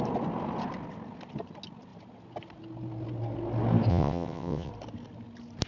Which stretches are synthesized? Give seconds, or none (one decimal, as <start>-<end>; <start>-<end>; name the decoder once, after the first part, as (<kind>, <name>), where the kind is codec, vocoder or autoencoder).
3.9-4.7 (vocoder, WaveNeXt)